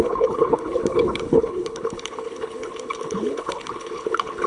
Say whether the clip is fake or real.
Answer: fake